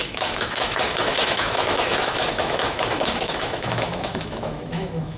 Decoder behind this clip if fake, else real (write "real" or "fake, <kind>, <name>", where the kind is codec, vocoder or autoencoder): fake, autoencoder, DAC-VAE